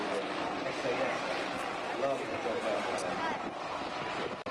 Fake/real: real